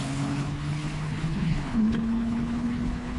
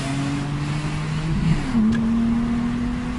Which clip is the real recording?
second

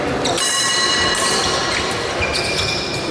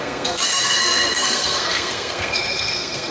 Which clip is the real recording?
first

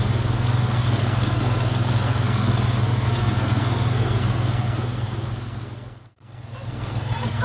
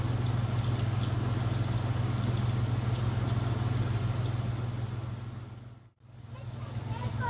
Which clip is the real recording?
second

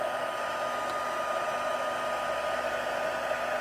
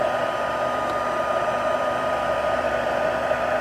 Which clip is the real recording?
first